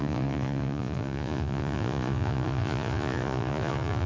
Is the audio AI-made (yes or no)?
yes